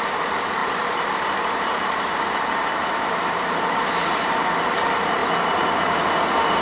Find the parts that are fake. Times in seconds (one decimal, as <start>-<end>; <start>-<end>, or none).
0.0-6.6